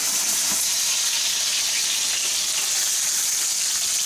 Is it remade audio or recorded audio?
recorded